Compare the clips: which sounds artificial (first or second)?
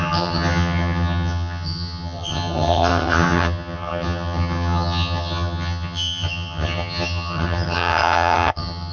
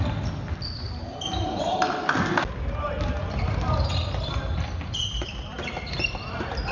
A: first